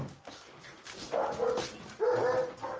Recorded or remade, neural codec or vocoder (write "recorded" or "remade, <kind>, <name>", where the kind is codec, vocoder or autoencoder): recorded